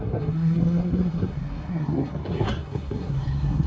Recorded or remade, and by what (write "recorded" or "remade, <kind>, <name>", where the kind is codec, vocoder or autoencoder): remade, codec, SNAC